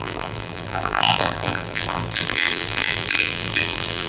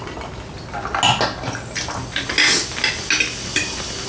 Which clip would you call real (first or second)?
second